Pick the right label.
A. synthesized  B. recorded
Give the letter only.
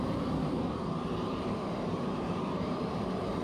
A